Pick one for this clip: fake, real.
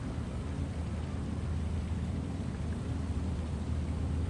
fake